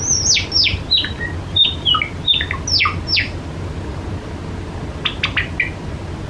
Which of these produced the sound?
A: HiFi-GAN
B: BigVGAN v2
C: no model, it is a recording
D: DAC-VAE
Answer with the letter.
C